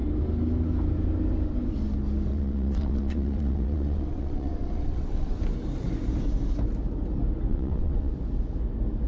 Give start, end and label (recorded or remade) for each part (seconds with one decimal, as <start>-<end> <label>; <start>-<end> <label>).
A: 0.0-2.3 recorded; 2.3-5.4 remade; 5.4-7.5 recorded; 7.5-8.1 remade; 8.1-9.1 recorded